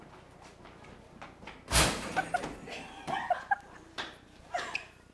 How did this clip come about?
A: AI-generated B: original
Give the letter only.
B